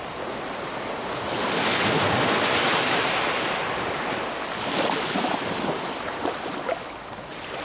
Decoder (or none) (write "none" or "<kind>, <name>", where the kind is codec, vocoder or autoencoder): none